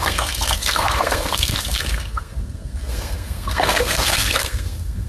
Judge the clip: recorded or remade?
remade